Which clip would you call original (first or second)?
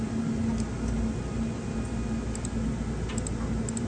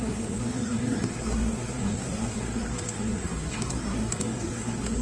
first